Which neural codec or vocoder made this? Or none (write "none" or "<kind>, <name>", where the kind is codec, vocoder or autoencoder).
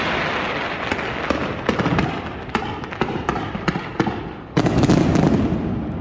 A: none